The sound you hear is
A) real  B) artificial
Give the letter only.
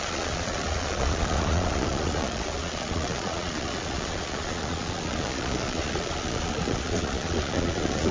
B